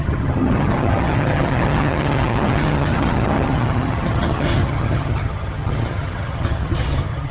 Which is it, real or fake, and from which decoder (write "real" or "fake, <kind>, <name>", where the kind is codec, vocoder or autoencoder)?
fake, vocoder, HiFi-GAN